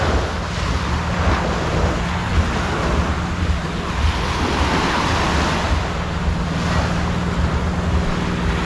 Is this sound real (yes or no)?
yes